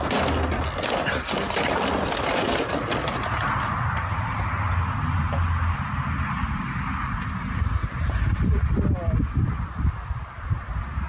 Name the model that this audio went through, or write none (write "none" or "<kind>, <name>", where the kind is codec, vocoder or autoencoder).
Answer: none